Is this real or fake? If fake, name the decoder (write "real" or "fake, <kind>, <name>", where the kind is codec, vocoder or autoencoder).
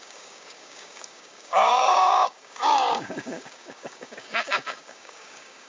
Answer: fake, codec, DAC